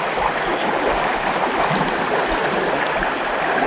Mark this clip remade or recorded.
recorded